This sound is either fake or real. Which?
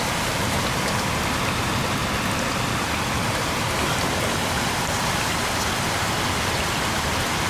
real